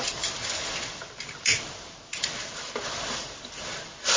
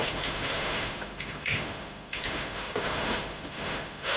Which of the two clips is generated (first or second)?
second